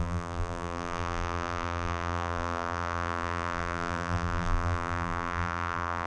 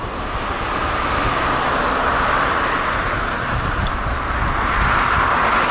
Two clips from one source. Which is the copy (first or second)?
first